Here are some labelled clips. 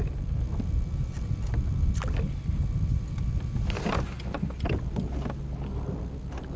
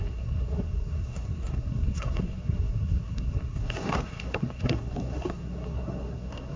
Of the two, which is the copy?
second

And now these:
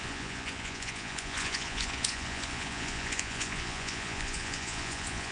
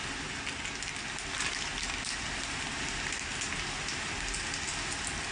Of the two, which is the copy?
first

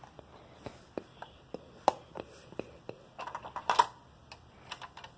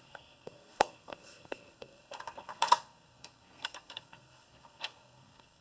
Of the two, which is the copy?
second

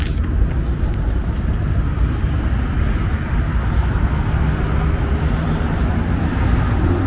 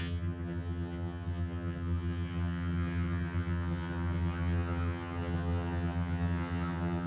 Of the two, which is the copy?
second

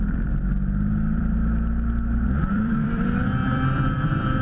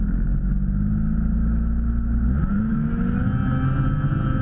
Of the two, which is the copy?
first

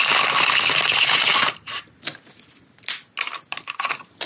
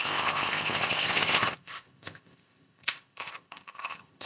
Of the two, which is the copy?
second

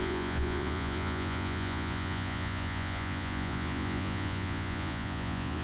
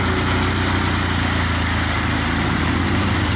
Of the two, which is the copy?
first